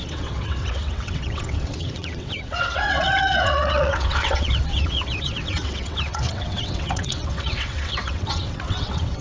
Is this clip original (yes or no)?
no